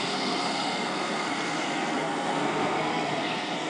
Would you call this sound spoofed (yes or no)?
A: yes